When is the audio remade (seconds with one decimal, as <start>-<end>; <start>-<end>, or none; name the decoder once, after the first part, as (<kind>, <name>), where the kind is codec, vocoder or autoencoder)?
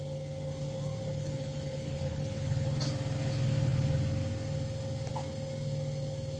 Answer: 1.1-2.7 (codec, HILCodec)